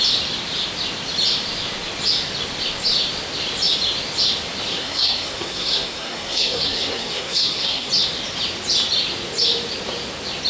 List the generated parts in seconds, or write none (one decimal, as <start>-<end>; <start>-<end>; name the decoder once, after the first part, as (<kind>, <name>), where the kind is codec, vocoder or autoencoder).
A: 4.7-7.9 (codec, SNAC)

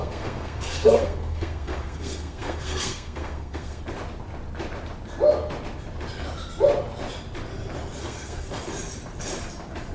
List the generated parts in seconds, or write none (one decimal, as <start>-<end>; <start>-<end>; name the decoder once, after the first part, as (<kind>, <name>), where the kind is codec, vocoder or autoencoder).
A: 0.0-3.8 (codec, SNAC); 8.0-8.5

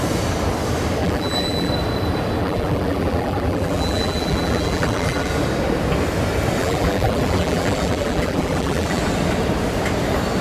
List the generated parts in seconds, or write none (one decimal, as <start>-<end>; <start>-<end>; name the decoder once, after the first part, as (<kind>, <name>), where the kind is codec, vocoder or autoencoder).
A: 1.0-1.7 (vocoder, BigVGAN v2); 2.4-5.3; 6.6-9.0

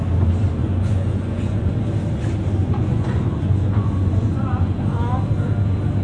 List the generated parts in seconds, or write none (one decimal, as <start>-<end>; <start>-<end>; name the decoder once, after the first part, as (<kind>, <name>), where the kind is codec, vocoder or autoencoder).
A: 0.6-1.7 (vocoder, Vocos); 2.6-4.8